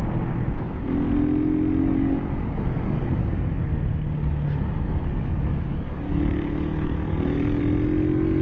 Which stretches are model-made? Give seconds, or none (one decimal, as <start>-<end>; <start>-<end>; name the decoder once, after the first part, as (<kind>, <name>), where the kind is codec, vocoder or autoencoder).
1.8-3.7 (codec, DAC); 5.0-7.6